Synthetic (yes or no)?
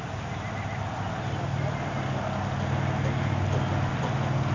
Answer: no